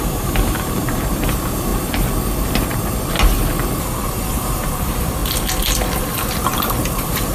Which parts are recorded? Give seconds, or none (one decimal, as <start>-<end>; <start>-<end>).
1.7-4.1; 5.2-5.9